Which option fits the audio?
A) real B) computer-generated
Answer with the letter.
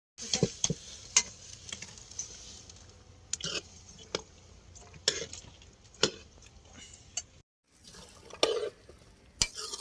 A